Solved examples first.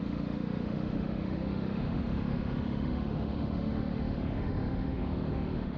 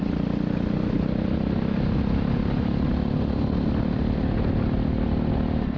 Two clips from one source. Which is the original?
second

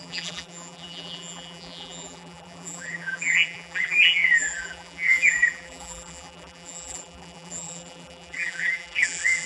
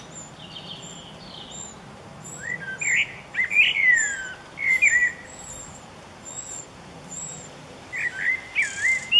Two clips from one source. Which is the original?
second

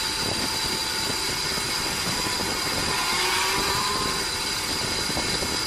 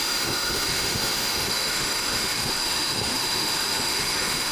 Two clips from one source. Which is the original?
first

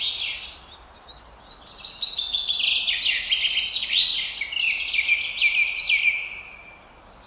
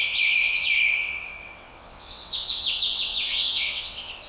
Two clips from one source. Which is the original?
first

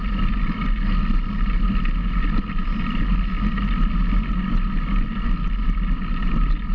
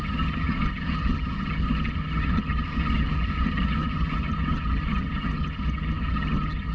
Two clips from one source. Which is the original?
first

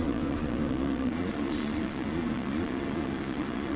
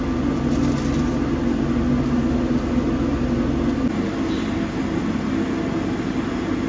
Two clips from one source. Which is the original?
second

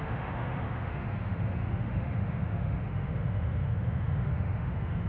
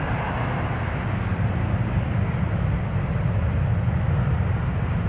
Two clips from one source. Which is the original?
second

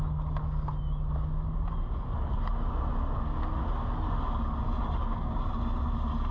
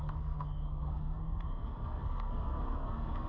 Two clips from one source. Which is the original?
first